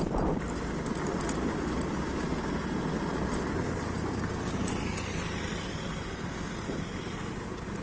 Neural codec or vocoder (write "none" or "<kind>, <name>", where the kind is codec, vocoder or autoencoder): none